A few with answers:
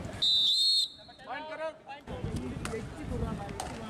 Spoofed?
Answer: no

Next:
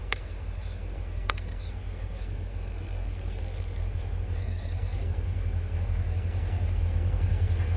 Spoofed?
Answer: yes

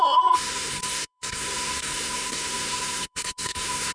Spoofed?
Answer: yes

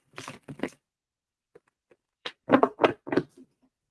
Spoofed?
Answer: yes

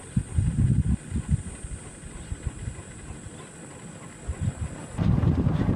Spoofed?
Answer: no